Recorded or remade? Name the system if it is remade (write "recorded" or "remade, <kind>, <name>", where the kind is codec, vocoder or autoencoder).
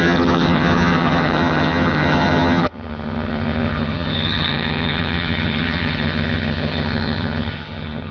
remade, vocoder, HiFi-GAN